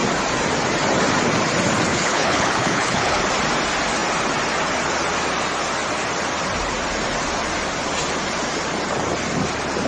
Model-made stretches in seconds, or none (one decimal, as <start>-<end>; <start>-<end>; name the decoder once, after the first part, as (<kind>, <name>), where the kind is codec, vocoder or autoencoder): 1.9-3.2 (codec, HILCodec)